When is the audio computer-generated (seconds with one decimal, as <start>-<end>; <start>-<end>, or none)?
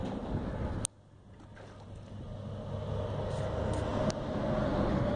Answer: none